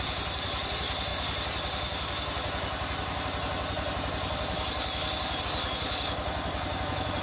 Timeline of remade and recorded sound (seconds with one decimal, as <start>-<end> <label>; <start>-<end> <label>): 0.0-7.2 recorded